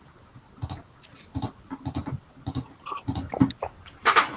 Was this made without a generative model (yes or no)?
yes